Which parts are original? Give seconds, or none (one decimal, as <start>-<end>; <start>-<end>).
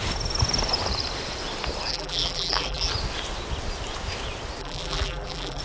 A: 0.0-1.9; 2.9-4.6